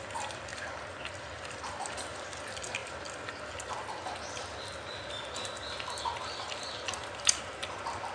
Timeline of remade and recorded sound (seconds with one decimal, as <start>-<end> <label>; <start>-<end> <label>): 0.0-8.1 recorded